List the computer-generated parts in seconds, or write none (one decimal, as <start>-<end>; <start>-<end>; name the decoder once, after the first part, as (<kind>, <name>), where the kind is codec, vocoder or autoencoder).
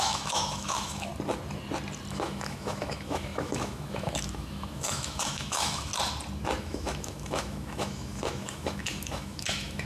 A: 0.0-1.1 (autoencoder, DAC-VAE); 2.1-5.9; 6.6-9.9